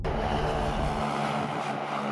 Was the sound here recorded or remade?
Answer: recorded